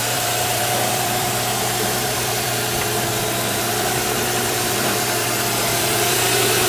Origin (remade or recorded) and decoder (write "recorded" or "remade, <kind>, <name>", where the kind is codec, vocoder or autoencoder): remade, vocoder, BigVGAN v2